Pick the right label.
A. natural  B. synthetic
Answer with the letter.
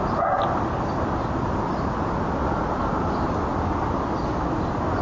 A